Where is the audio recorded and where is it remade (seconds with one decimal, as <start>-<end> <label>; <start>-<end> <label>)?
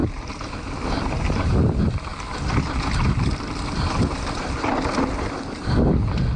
0.0-6.4 recorded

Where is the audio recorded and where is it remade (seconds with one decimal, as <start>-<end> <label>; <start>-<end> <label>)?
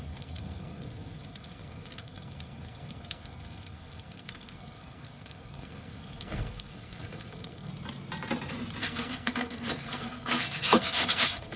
0.0-7.7 remade; 7.7-8.8 recorded; 8.8-11.6 remade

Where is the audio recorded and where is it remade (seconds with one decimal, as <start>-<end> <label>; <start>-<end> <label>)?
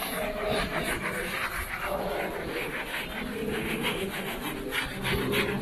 0.0-2.5 recorded; 2.5-3.0 remade; 3.0-3.5 recorded; 3.5-4.4 remade; 4.4-5.6 recorded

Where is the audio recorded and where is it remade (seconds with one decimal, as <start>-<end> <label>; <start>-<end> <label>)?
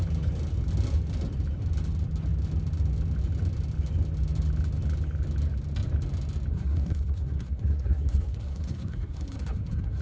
0.0-6.5 recorded; 6.5-10.0 remade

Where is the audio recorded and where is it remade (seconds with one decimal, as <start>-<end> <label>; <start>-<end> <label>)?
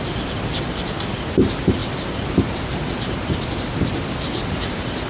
0.0-5.1 recorded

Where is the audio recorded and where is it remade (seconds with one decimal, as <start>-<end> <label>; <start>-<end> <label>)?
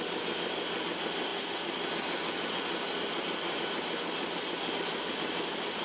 0.0-5.8 recorded